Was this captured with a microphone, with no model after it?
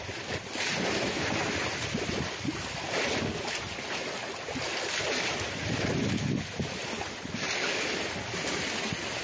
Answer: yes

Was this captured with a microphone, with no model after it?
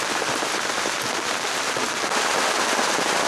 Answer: yes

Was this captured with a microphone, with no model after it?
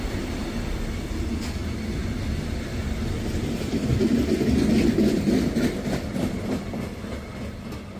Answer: yes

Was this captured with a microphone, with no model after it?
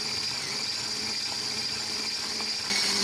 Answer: yes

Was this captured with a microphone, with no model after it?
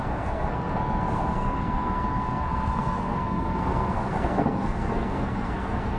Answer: no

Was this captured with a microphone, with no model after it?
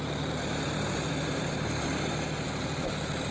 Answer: no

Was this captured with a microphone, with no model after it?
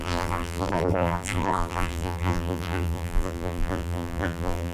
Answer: no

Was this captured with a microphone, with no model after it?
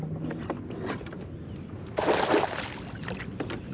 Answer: yes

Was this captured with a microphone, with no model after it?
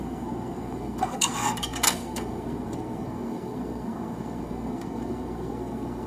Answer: no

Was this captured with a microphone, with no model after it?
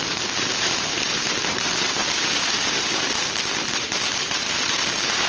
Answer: no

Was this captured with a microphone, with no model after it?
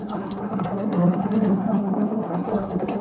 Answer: no